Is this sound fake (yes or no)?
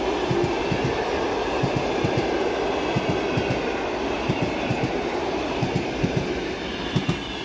no